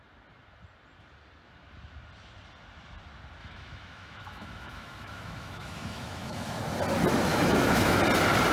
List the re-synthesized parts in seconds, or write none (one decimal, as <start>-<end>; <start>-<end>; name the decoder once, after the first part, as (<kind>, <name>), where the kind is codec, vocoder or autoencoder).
3.4-6.6 (autoencoder, DAC-VAE); 7.3-8.0